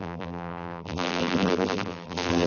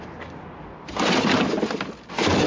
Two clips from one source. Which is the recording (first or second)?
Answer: second